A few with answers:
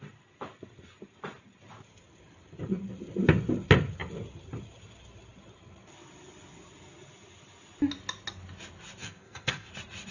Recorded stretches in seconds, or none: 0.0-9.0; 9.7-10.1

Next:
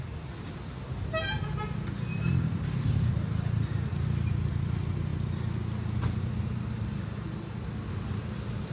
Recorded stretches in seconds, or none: 0.0-8.7

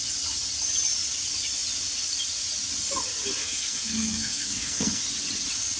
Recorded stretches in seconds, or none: 0.0-3.4; 5.0-5.8

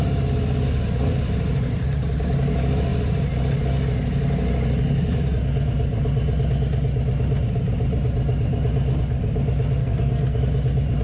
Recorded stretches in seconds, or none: 0.0-9.8; 10.4-11.0

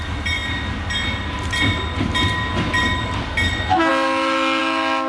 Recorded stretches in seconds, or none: 0.0-5.1

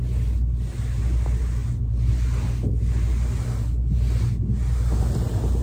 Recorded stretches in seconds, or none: 0.0-5.6